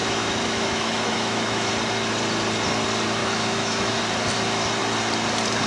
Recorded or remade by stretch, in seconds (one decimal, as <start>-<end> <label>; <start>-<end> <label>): 0.0-1.7 remade; 1.7-3.2 recorded; 3.2-4.0 remade; 4.0-5.7 recorded